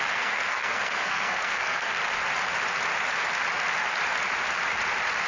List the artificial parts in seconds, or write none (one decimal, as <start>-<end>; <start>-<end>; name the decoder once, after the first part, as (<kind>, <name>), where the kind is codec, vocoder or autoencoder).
0.0-2.0 (codec, SNAC)